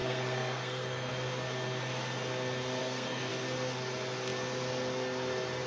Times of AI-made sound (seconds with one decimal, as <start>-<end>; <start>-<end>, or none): 0.0-1.1; 2.8-3.3